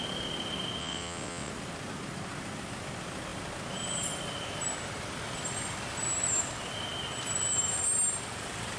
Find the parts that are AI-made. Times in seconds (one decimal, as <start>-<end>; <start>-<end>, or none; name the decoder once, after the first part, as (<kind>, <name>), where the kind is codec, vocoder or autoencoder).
0.8-1.5 (vocoder, WaveNeXt)